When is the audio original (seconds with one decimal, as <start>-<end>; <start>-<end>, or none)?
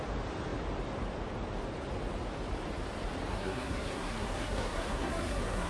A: 0.0-3.3